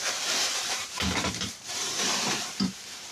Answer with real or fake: fake